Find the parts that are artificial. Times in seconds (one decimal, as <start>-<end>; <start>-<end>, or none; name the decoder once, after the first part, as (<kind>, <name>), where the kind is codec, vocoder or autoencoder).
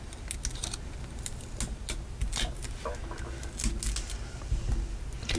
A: none